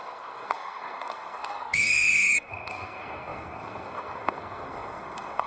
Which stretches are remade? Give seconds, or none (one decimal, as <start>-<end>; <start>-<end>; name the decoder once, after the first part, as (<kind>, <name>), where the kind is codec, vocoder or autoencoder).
0.0-5.5 (codec, SNAC)